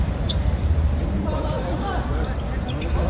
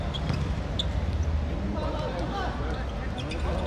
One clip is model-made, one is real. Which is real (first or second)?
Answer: second